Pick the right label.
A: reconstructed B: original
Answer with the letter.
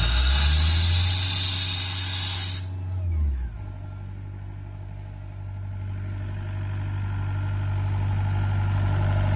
B